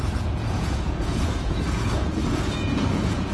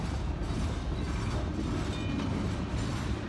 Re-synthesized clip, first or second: first